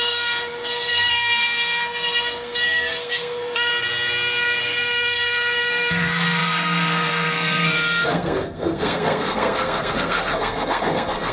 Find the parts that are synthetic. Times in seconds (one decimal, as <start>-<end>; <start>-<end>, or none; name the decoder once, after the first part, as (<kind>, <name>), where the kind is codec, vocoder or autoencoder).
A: 0.0-3.7 (codec, SNAC); 4.6-11.3